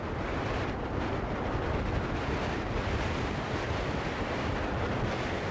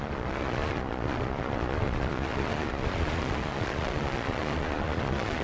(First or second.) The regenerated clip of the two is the second